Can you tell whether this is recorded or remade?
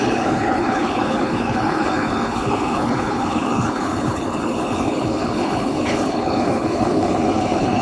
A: remade